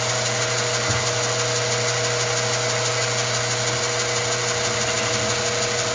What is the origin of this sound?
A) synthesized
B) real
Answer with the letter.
B